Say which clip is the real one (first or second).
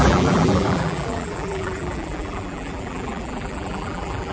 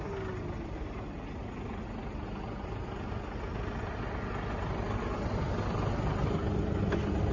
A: second